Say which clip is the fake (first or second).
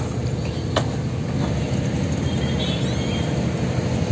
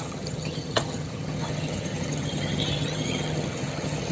second